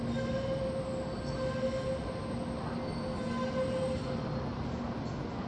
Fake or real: real